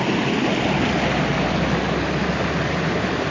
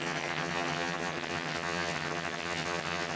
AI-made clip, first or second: second